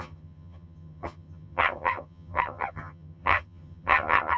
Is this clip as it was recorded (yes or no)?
no